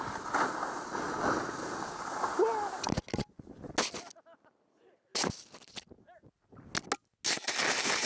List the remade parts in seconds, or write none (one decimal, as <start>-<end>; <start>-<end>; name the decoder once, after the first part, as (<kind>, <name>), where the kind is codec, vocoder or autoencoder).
none